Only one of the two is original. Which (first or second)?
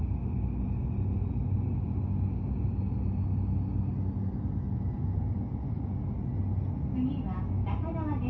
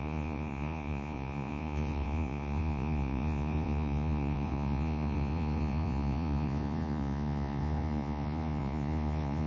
first